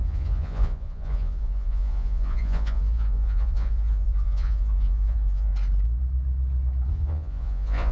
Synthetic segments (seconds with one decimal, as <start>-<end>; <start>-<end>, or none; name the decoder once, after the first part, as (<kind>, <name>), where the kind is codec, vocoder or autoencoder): 0.0-5.5 (vocoder, Vocos); 6.9-7.9